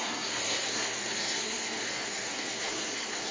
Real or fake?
fake